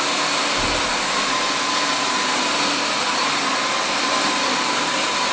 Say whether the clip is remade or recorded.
recorded